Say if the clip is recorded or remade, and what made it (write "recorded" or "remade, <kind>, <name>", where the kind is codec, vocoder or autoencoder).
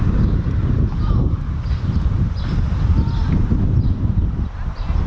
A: recorded